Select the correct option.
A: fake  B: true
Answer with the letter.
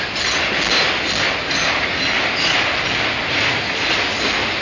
B